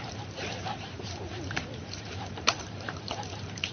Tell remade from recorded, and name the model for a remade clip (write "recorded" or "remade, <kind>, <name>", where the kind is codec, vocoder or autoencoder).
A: remade, vocoder, BigVGAN v2